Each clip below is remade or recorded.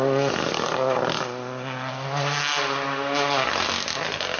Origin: recorded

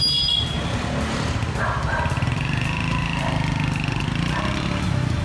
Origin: recorded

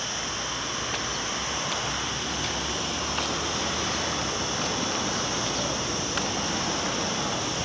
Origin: recorded